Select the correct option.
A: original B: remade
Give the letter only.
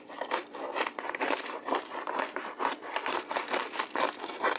B